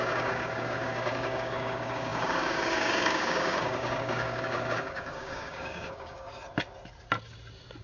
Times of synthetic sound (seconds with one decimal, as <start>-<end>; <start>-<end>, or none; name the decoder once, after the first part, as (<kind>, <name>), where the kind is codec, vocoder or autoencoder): 0.0-6.3 (codec, DAC)